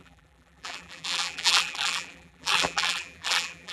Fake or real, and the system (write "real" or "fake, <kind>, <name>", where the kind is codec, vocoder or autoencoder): fake, vocoder, BigVGAN v2